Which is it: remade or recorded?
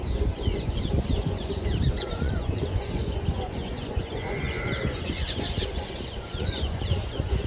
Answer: remade